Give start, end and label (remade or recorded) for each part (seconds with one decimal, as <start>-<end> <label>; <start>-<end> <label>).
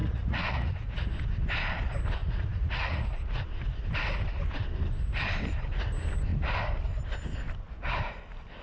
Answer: 0.0-1.1 remade; 1.1-2.2 recorded; 2.2-3.0 remade; 3.0-8.6 recorded